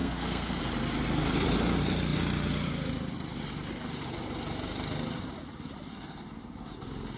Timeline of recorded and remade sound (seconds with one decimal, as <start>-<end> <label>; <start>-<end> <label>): 0.0-0.6 remade; 0.6-7.2 recorded